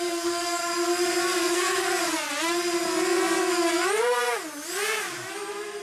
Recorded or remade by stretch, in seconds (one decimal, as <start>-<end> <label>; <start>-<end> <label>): 0.0-0.6 remade; 0.6-1.5 recorded; 1.5-1.9 remade; 1.9-5.8 recorded